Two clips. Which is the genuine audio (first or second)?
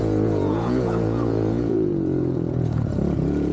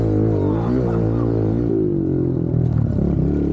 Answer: second